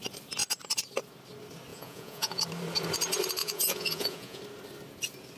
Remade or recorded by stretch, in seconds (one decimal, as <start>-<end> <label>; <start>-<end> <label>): 0.0-1.7 recorded; 1.7-2.4 remade; 2.4-3.4 recorded; 3.4-4.4 remade; 4.4-5.4 recorded